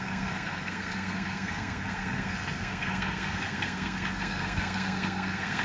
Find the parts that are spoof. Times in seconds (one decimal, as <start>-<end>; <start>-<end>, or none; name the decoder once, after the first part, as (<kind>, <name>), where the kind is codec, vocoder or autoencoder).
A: 0.0-5.6 (codec, SNAC)